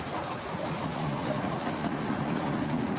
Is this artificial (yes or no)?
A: yes